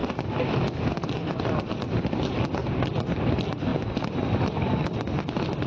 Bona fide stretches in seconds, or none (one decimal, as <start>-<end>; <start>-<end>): 0.0-5.7